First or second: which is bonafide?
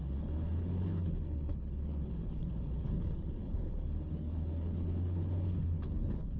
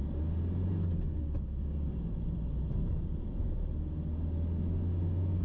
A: second